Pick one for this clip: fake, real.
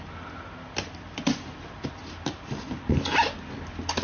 real